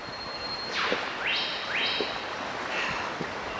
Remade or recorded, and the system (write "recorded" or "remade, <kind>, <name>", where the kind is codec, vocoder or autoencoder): recorded